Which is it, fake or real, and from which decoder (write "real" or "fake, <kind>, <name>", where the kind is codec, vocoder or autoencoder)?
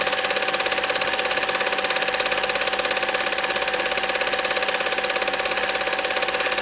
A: real